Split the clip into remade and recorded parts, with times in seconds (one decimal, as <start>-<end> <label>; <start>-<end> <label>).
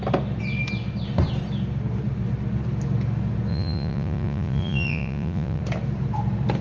0.0-3.5 recorded; 3.5-5.6 remade; 5.6-6.6 recorded